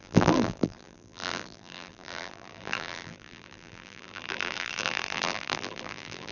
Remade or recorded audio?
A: remade